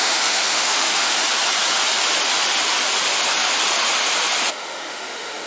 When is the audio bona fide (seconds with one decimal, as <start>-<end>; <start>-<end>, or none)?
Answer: 1.2-4.5